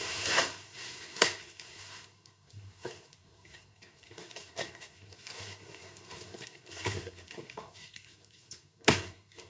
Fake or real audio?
fake